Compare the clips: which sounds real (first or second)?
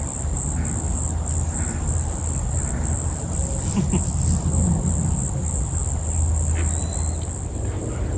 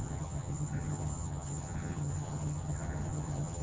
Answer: first